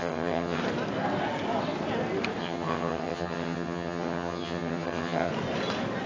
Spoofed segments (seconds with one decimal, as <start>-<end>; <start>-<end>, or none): 0.0-0.6; 2.4-5.3